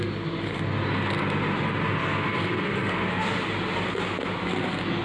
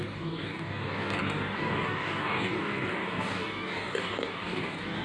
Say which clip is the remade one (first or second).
second